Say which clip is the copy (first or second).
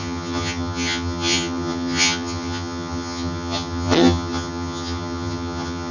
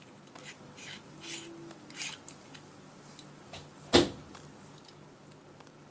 first